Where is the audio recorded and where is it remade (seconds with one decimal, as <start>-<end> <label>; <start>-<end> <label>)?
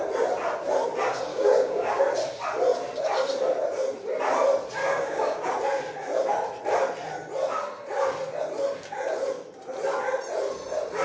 0.0-1.3 recorded; 1.3-2.0 remade; 2.0-4.8 recorded; 4.8-5.5 remade; 5.5-11.0 recorded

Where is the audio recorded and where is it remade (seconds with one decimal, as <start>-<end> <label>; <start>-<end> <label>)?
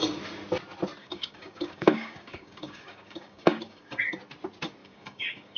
0.0-1.0 recorded; 1.0-4.1 remade; 4.1-4.8 recorded; 4.8-5.6 remade